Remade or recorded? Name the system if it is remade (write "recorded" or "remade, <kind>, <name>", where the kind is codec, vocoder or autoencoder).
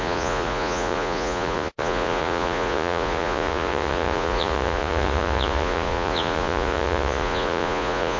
remade, vocoder, Vocos